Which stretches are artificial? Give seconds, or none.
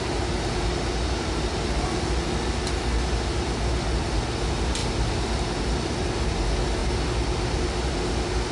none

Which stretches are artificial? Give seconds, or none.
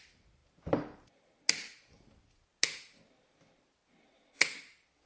none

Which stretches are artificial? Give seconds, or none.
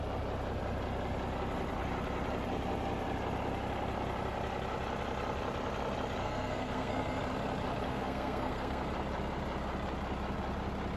6.2-7.2 (codec, SNAC); 7.9-8.8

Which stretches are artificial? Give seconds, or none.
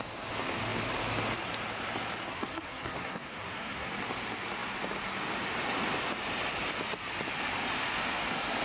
2.3-3.9 (codec, SNAC)